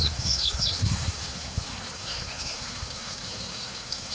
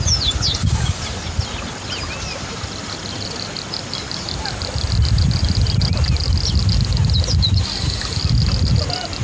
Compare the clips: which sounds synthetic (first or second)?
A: first